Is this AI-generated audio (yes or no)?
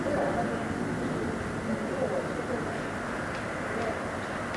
no